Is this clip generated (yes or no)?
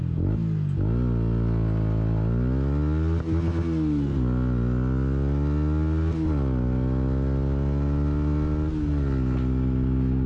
no